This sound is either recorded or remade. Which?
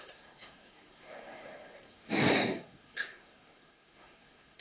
remade